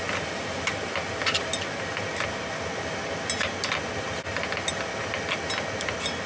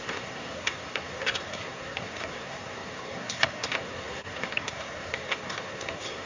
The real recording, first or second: first